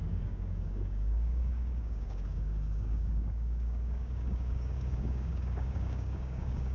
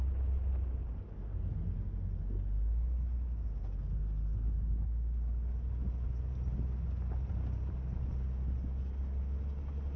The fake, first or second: first